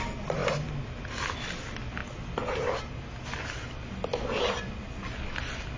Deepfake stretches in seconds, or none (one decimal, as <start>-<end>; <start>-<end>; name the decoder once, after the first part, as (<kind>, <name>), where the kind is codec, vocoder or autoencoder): none